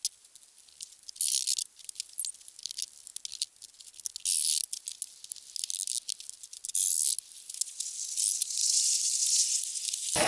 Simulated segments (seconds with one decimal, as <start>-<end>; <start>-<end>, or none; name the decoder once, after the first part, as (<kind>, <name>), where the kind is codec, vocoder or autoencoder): 8.6-9.7 (vocoder, BigVGAN v2)